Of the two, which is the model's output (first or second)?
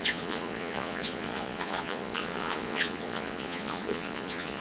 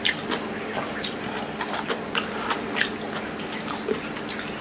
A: first